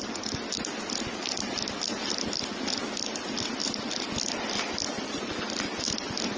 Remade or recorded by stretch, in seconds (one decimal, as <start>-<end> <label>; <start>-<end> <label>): 0.0-6.4 recorded